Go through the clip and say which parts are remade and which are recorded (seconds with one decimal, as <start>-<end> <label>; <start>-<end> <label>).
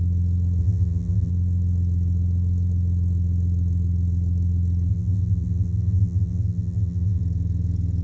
0.0-0.6 recorded; 0.6-1.3 remade; 1.3-4.9 recorded; 4.9-7.2 remade; 7.2-8.0 recorded